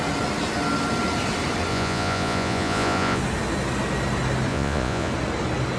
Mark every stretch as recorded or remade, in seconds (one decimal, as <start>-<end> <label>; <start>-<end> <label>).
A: 0.0-1.7 recorded; 1.7-3.2 remade; 3.2-4.5 recorded; 4.5-5.1 remade; 5.1-5.8 recorded